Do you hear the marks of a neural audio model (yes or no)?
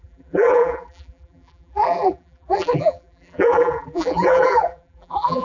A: yes